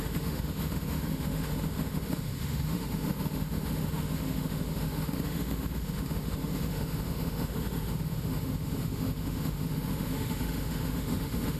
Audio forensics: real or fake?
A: fake